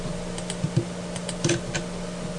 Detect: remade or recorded recorded